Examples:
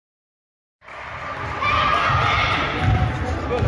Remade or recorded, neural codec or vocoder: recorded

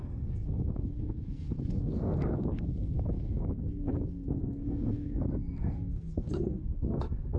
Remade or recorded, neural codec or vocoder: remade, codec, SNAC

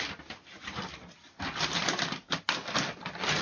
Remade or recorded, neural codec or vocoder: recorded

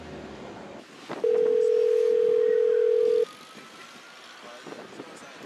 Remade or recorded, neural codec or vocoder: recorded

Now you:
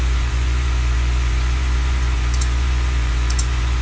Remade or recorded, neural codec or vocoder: remade, vocoder, Vocos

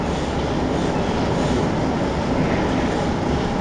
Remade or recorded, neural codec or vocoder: recorded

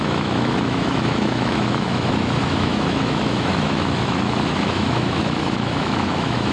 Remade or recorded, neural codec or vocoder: remade, autoencoder, DAC-VAE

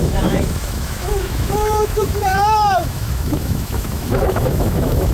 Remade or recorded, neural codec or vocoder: remade, autoencoder, DAC-VAE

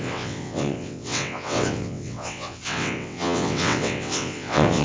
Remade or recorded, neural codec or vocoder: remade, vocoder, WaveNeXt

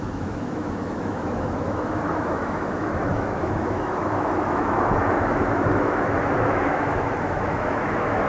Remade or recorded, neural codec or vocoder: remade, autoencoder, DAC-VAE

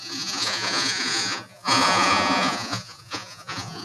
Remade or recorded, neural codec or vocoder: remade, vocoder, Vocos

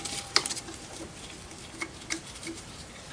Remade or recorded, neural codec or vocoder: remade, vocoder, BigVGAN v2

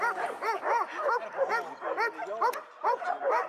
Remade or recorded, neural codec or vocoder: recorded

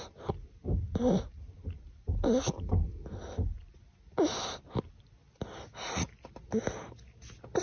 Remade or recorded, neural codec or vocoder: recorded